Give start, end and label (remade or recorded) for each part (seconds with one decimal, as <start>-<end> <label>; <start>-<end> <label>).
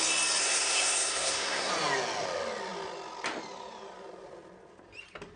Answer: 0.0-0.4 recorded; 0.4-1.7 remade; 1.7-5.4 recorded